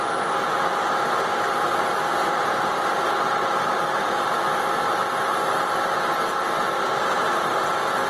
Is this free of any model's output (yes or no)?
yes